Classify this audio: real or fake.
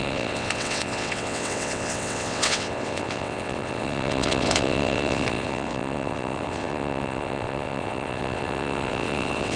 fake